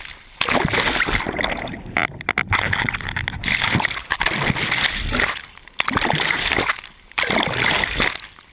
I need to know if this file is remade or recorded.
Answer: recorded